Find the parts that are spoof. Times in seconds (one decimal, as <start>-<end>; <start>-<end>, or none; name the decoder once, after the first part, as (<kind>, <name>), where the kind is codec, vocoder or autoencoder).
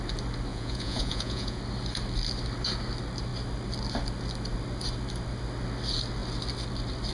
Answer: 0.5-1.6 (vocoder, Vocos)